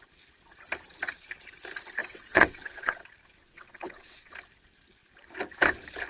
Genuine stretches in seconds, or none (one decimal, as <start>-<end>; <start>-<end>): 0.0-2.0; 3.0-3.4; 4.3-6.1